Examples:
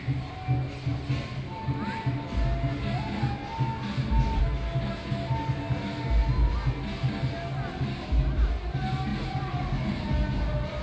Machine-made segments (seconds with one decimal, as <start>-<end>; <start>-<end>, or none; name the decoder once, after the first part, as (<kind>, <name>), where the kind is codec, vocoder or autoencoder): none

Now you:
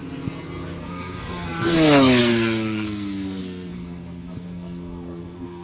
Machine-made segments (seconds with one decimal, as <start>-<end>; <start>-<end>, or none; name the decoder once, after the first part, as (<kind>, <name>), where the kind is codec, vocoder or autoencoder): 0.8-5.6 (codec, SNAC)

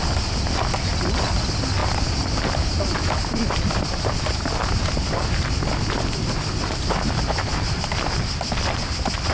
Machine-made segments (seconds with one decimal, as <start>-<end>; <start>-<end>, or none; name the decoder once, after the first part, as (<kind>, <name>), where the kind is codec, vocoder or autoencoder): 1.8-5.7 (vocoder, BigVGAN v2)

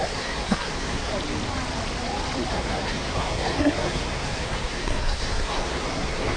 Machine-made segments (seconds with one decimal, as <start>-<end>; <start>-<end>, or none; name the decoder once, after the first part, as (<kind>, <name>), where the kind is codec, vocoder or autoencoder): 0.0-1.1 (codec, SNAC); 2.5-6.4

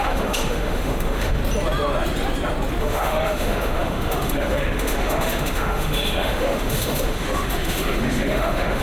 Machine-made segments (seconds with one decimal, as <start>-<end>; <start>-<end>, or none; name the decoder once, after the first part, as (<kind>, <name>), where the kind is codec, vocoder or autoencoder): 0.0-1.4 (autoencoder, DAC-VAE); 2.8-8.8

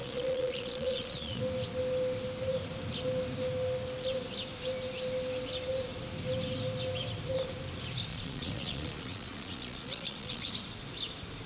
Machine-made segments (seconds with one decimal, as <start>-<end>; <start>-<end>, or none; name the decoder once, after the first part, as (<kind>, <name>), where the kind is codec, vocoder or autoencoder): 0.0-1.4 (vocoder, Vocos); 8.1-10.5